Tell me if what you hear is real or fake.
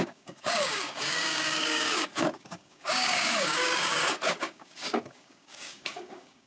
fake